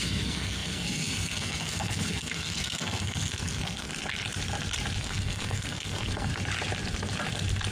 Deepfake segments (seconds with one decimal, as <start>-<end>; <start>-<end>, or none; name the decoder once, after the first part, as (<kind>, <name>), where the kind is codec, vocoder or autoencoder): 0.0-3.9 (codec, SNAC); 5.0-6.3

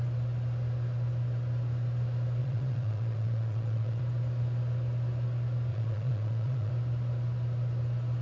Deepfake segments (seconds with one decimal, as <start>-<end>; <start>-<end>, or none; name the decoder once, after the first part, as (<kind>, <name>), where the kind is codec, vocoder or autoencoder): 2.4-4.0 (vocoder, Vocos); 5.7-6.7

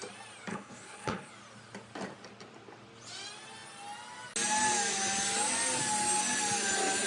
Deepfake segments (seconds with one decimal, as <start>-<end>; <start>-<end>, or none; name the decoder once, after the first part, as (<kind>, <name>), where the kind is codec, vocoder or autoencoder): 0.5-1.3 (codec, HILCodec)

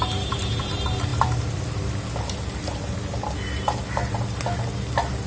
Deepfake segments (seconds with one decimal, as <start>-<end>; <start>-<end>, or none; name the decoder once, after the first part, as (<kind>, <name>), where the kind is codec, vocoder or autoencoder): none

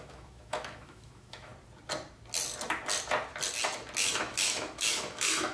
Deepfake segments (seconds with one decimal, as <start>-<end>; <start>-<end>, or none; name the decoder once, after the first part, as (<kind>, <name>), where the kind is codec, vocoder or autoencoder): 0.0-1.5 (autoencoder, DAC-VAE); 4.0-5.5

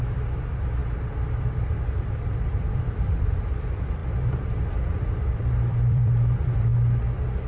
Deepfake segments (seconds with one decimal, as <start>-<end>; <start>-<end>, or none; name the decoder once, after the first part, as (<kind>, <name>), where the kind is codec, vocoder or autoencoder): 0.0-6.7 (vocoder, BigVGAN v2)